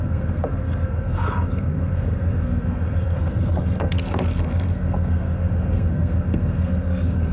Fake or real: fake